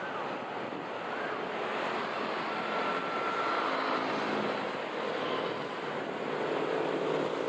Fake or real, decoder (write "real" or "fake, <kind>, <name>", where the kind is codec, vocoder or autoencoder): real